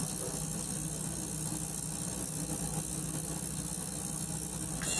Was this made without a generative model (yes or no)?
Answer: yes